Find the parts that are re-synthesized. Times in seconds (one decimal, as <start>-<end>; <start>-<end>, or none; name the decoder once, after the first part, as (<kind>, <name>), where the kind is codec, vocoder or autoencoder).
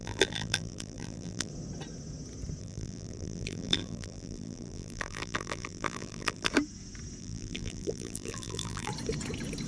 0.0-1.5 (vocoder, BigVGAN v2); 2.6-6.5; 7.2-8.9